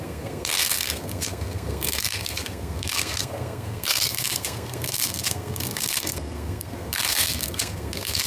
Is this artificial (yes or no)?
yes